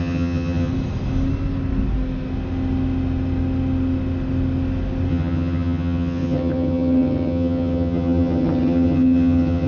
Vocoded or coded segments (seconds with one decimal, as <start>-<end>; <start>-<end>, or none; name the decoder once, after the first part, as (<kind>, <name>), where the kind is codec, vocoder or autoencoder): 0.0-0.7 (vocoder, HiFi-GAN); 5.1-9.7